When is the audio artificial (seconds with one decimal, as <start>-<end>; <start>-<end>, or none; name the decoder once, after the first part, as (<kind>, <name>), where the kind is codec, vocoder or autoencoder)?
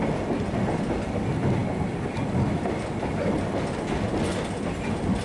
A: none